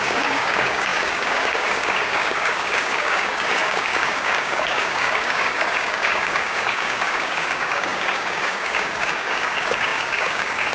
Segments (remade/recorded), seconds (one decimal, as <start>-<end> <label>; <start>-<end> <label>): 0.0-10.7 remade